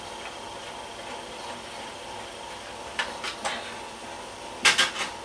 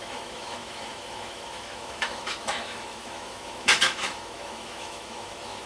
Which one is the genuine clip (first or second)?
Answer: first